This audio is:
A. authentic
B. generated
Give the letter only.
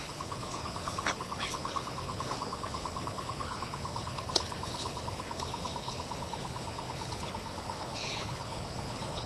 B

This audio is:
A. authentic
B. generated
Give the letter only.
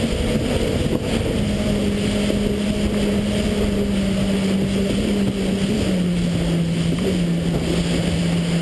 A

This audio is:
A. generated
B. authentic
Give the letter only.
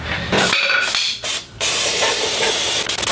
B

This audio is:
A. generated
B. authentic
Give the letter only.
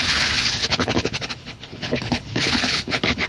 A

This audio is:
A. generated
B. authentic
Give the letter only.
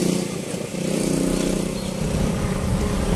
B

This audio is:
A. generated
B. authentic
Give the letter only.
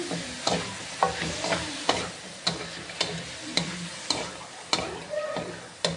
B